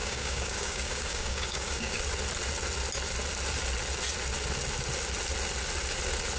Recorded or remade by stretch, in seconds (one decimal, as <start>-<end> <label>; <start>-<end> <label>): 0.0-2.0 remade; 2.0-6.4 recorded